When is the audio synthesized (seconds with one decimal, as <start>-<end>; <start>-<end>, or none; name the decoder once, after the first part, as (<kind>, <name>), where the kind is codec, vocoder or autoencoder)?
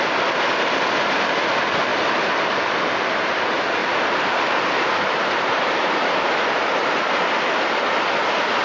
1.9-2.6 (vocoder, BigVGAN v2); 3.8-6.1; 6.8-7.3